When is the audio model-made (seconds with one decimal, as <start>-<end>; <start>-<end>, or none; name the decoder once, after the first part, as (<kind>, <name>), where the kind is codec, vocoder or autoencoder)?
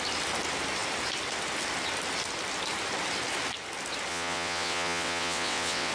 4.1-5.9 (vocoder, WaveNeXt)